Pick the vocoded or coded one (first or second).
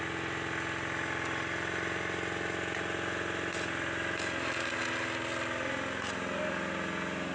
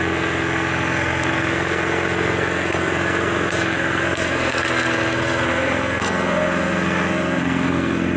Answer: second